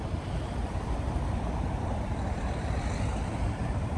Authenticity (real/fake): fake